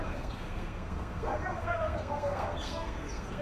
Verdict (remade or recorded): remade